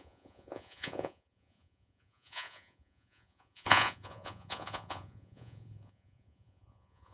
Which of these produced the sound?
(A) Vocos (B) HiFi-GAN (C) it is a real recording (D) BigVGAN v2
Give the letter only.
A